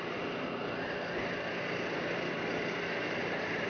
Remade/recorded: recorded